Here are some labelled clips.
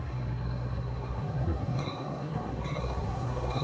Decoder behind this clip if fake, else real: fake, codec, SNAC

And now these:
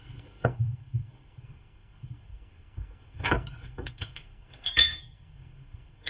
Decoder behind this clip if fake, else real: fake, codec, SNAC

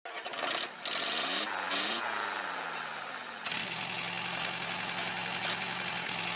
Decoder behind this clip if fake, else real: real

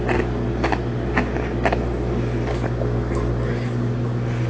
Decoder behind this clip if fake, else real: real